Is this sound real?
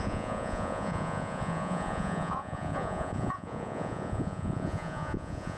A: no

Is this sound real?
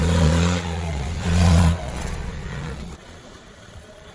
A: no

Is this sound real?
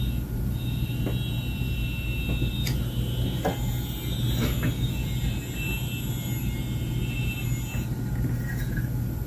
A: yes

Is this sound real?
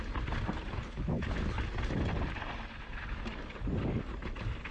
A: yes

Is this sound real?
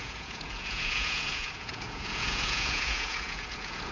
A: no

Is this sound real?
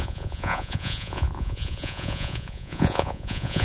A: no